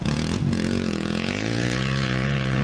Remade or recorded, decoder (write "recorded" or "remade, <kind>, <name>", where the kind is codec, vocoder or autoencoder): remade, vocoder, Vocos